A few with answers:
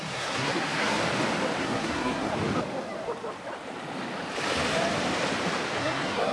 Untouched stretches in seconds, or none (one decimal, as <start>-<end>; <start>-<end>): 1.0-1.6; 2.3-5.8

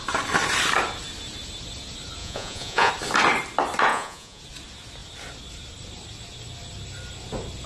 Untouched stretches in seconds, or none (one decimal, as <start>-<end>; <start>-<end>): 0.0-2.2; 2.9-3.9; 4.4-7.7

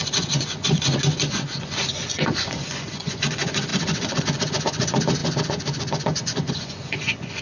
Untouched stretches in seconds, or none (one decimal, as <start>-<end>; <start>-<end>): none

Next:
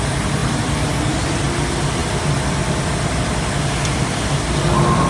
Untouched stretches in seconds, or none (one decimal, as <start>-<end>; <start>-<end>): 0.0-2.0; 4.0-5.1

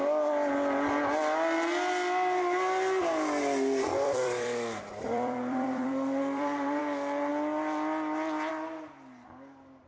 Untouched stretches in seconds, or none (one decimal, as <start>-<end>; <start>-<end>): 0.0-3.9; 6.8-9.9

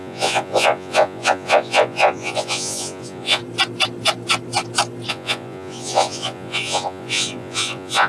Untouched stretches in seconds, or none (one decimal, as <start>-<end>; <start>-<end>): 3.4-5.1

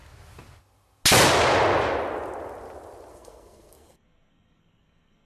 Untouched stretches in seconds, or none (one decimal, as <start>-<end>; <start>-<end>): 0.0-3.1